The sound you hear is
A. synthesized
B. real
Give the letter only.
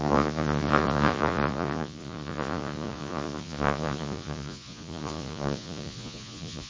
A